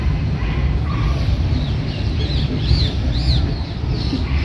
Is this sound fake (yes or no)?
yes